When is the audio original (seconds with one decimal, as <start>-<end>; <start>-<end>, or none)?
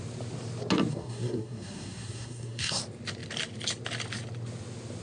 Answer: 0.0-0.9; 2.8-5.0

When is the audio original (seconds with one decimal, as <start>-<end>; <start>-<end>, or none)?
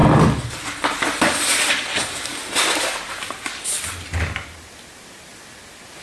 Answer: 0.0-6.0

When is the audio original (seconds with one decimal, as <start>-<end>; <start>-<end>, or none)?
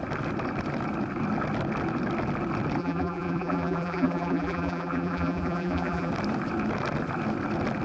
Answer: 0.0-2.8; 6.1-7.8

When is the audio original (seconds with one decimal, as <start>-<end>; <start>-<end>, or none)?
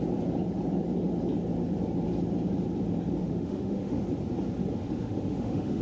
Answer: 0.0-3.2; 4.0-4.8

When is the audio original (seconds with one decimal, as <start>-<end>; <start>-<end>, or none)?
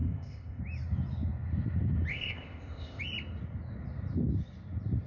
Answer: 0.6-2.1; 3.0-5.1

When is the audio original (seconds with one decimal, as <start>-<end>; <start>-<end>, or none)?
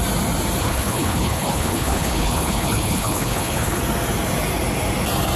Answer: 0.0-0.6; 3.8-5.4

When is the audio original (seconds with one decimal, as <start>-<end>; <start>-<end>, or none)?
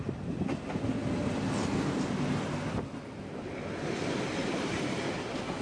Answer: 0.0-5.6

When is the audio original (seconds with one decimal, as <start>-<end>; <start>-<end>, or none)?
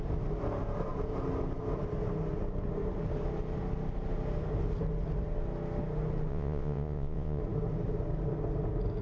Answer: 0.0-6.3; 7.4-9.0